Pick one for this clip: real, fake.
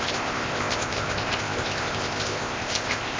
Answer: fake